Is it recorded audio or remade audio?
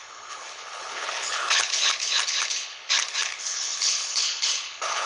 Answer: remade